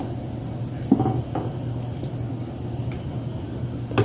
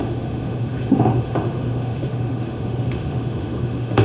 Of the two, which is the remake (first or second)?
second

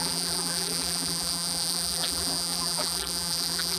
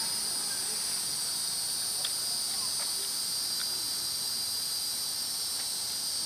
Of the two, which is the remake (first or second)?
first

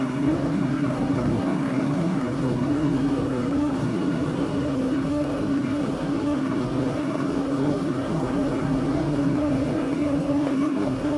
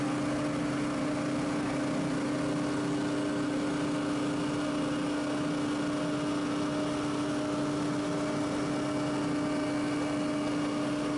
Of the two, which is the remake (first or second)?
first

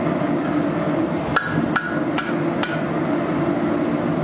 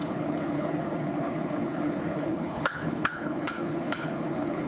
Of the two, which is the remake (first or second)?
second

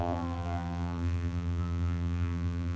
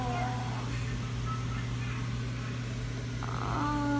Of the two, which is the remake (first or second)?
first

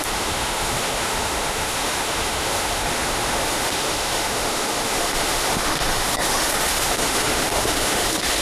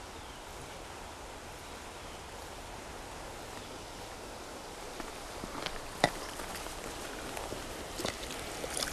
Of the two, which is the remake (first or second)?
first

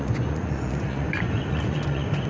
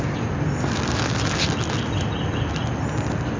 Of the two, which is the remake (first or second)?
first